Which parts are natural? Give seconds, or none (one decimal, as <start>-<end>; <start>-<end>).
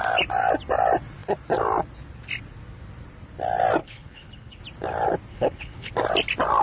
0.0-3.8; 4.6-5.3; 5.9-6.6